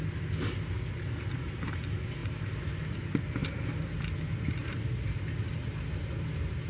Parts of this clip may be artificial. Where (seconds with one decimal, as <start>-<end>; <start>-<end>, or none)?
2.2-2.9; 4.6-5.4